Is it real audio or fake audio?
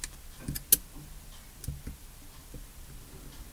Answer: real